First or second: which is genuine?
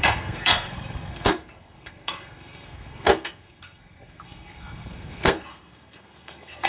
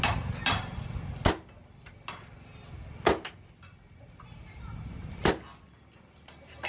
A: second